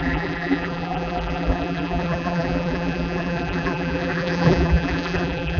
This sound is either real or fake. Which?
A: fake